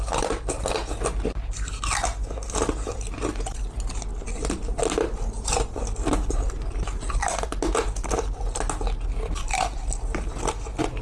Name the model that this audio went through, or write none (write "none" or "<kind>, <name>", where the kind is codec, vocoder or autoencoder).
none